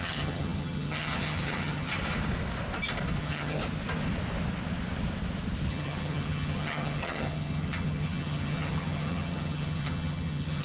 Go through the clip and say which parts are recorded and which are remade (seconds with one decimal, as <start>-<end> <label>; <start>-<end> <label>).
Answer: 0.0-1.9 remade; 1.9-3.2 recorded; 3.2-3.6 remade; 3.6-5.7 recorded; 5.7-10.6 remade